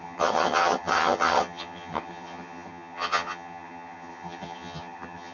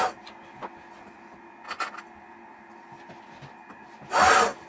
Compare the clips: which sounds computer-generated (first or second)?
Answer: first